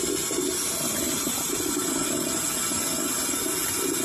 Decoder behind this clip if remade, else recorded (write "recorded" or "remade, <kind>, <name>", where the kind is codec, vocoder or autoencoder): recorded